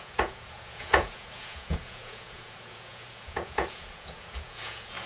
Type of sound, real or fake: fake